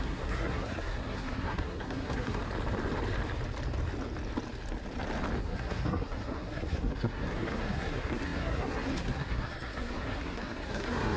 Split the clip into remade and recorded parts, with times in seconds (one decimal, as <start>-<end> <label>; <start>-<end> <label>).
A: 0.0-2.4 remade; 2.4-5.4 recorded; 5.4-11.2 remade